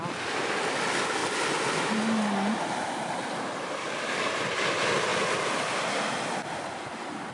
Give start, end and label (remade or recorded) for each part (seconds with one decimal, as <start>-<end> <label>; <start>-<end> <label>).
0.0-3.8 recorded; 3.8-4.3 remade; 4.3-7.3 recorded